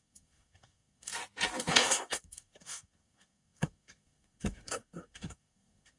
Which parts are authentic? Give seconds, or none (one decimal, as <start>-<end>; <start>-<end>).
1.1-1.7